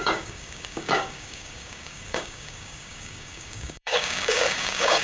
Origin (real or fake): fake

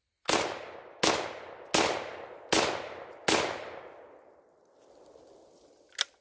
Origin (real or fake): real